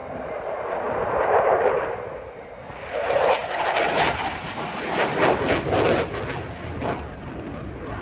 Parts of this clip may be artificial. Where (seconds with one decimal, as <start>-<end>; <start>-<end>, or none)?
0.0-0.8